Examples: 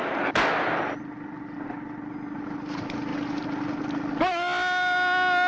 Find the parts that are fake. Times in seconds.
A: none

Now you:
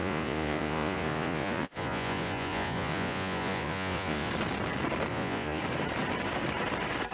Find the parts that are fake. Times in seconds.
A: 0.0-4.3 (vocoder, Vocos); 5.1-5.6

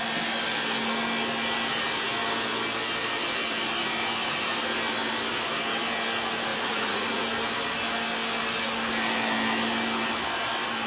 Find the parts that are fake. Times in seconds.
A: 6.5-7.2 (vocoder, Vocos)